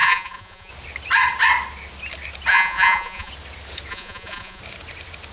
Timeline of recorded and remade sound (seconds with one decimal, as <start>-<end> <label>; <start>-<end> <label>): 0.0-0.7 remade; 0.7-2.5 recorded; 2.5-3.3 remade; 3.3-3.9 recorded; 3.9-4.6 remade; 4.6-5.3 recorded